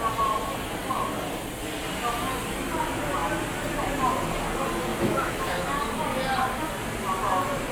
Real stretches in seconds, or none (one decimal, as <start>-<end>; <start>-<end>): 0.0-4.9; 5.6-7.7